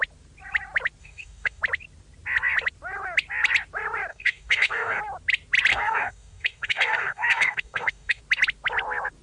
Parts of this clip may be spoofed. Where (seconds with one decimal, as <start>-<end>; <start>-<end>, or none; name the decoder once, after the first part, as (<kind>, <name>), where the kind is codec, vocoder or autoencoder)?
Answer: 1.0-1.6 (codec, DAC); 4.1-5.0; 5.7-8.2